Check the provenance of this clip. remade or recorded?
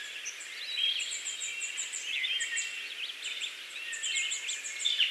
recorded